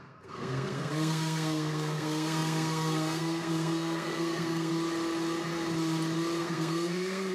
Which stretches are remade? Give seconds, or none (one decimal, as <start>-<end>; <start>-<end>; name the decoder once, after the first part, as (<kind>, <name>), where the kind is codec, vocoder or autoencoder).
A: 0.0-4.7 (codec, SNAC); 6.4-7.3